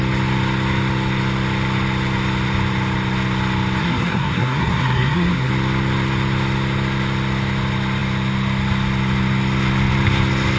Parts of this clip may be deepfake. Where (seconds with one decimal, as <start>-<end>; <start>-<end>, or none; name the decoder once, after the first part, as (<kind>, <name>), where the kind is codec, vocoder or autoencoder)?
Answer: 3.8-5.5 (codec, SNAC)